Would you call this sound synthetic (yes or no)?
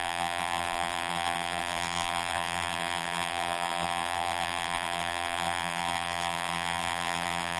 yes